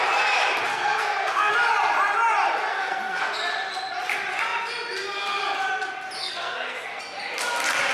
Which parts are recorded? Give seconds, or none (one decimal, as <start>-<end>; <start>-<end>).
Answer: 0.0-0.7; 1.5-2.7; 3.3-6.2; 7.0-7.9